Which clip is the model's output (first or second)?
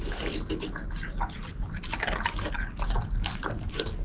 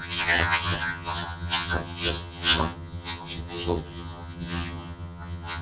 second